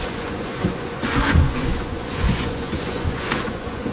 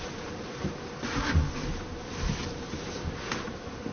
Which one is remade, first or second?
first